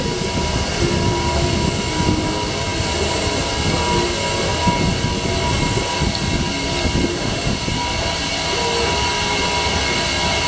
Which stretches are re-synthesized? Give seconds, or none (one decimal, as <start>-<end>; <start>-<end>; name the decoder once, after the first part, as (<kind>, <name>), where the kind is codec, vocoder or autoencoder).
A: 7.1-7.6 (autoencoder, DAC-VAE)